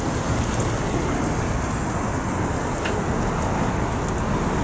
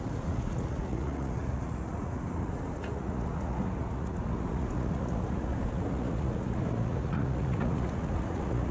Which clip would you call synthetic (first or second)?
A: second